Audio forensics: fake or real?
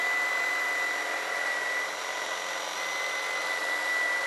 real